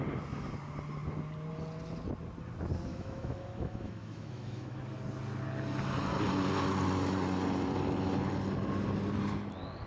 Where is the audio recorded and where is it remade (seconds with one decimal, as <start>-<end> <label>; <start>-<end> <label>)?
0.0-2.9 recorded; 2.9-4.8 remade; 4.8-9.9 recorded